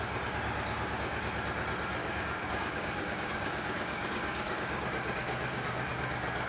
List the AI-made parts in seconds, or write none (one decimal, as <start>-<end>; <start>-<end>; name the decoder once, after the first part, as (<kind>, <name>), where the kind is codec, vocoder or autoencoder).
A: 2.0-5.8 (codec, DAC)